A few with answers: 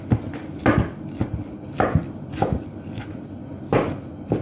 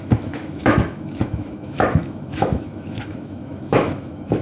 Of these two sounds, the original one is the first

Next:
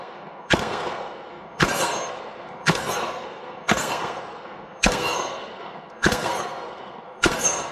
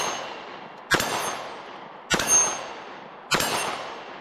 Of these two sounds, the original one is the second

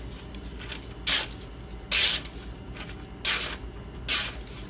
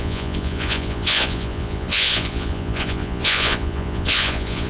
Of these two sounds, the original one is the first